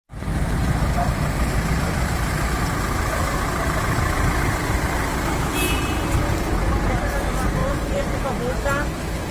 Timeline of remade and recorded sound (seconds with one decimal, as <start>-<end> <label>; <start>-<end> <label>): 0.0-0.6 recorded; 0.6-5.5 remade; 5.5-7.6 recorded; 7.6-8.3 remade; 8.3-9.3 recorded